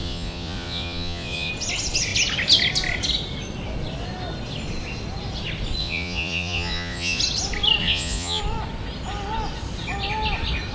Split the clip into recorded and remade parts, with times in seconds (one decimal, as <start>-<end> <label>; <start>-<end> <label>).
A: 0.0-1.5 remade; 1.5-5.8 recorded; 5.8-7.2 remade; 7.2-7.8 recorded; 7.8-8.4 remade; 8.4-10.7 recorded